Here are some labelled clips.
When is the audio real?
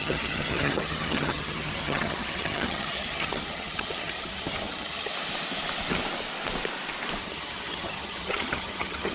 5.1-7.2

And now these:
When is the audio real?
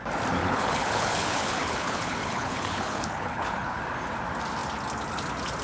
0.0-0.4; 3.8-5.6